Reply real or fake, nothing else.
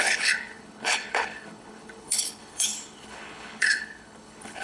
fake